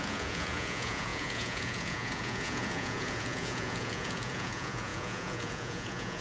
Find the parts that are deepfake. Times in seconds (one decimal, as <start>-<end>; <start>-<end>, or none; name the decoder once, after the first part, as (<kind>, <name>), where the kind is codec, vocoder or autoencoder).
0.0-6.2 (vocoder, Vocos)

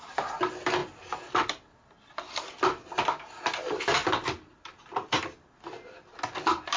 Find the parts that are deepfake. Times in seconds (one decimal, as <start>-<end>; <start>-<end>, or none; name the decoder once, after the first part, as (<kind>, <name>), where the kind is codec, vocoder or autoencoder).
none